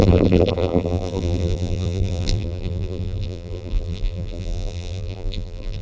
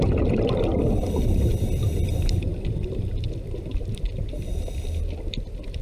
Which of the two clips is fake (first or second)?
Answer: first